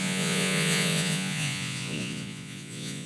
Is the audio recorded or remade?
remade